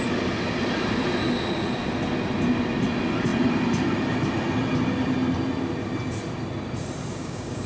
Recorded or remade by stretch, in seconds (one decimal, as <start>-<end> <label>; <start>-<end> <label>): 0.0-7.1 recorded; 7.1-7.7 remade